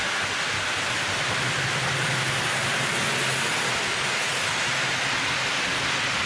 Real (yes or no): yes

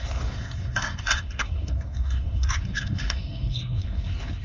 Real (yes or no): no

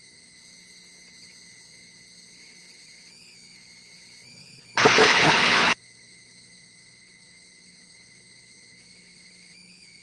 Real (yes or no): no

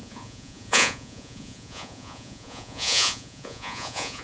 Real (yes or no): no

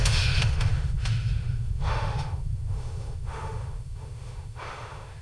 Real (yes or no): no